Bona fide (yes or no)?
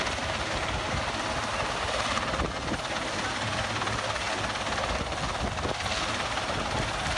yes